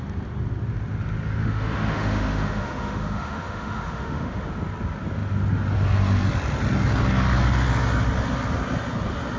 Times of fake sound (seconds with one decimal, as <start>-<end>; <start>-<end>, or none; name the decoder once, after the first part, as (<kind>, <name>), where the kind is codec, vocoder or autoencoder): 1.4-4.5 (autoencoder, DAC-VAE)